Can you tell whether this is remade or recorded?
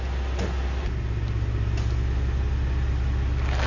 recorded